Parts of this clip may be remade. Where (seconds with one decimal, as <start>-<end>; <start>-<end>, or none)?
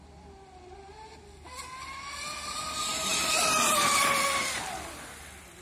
none